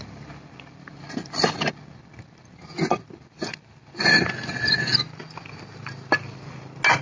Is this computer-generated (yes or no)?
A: no